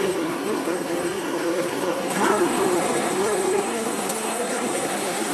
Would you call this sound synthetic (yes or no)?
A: yes